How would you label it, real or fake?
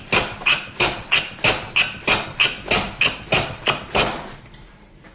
real